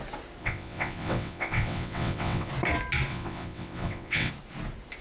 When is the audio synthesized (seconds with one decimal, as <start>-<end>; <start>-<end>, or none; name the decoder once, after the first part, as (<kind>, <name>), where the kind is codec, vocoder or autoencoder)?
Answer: 0.4-2.5 (vocoder, WaveNeXt); 3.1-4.3